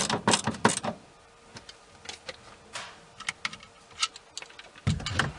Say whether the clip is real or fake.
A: real